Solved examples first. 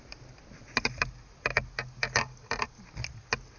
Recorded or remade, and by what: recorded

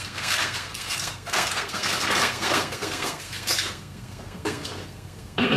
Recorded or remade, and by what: remade, codec, SNAC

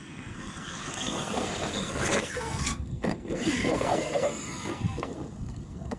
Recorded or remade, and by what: remade, codec, SNAC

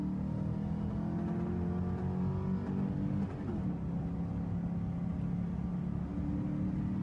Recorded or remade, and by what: recorded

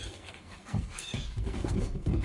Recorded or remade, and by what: remade, codec, SNAC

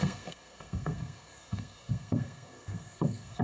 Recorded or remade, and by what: remade, codec, SNAC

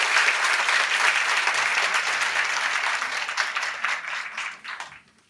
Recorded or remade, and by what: recorded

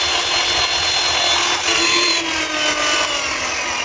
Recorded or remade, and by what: recorded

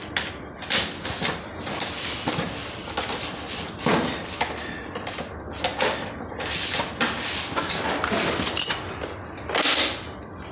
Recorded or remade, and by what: recorded